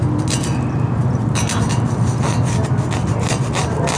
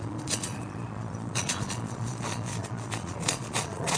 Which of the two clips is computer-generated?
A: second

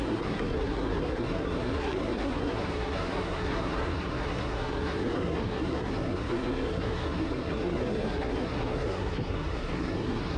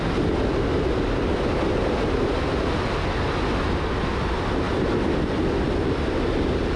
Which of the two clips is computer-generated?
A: first